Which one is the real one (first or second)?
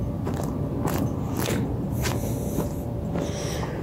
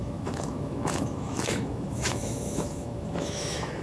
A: first